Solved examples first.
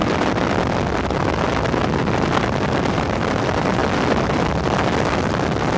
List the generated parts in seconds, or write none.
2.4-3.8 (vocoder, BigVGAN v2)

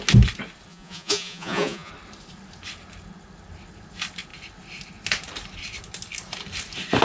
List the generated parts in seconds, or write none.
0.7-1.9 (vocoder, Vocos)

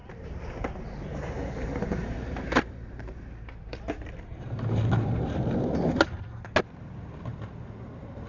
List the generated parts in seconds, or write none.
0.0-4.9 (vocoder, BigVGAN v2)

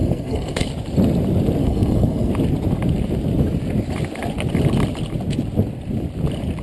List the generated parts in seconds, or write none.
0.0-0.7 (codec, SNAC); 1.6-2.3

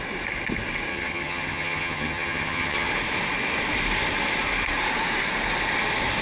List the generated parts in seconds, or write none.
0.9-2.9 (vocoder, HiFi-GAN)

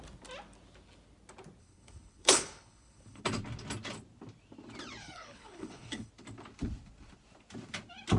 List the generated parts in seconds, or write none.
1.6-3.2 (codec, HILCodec); 5.0-6.1

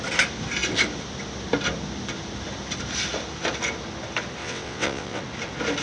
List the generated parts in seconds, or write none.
4.4-5.2 (vocoder, WaveNeXt)